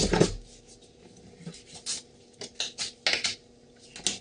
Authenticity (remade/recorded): recorded